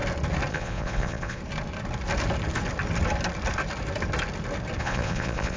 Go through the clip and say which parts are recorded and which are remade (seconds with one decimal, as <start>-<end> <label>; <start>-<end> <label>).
0.0-0.5 recorded; 0.5-1.4 remade; 1.4-4.8 recorded; 4.8-5.6 remade